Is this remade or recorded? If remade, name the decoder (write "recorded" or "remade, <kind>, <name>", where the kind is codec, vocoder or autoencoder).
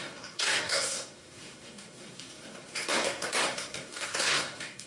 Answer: remade, codec, SNAC